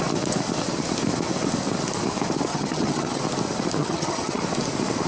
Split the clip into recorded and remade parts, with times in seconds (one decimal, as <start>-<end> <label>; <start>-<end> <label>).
0.0-2.5 recorded; 2.5-3.2 remade; 3.2-3.8 recorded; 3.8-4.4 remade; 4.4-5.1 recorded